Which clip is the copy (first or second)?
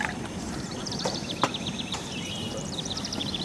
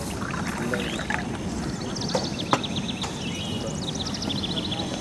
first